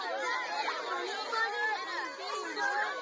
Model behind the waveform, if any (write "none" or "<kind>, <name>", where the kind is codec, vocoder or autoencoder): none